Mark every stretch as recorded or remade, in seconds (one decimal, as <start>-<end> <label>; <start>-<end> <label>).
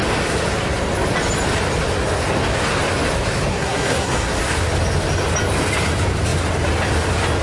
0.0-3.5 recorded; 3.5-4.3 remade; 4.3-7.4 recorded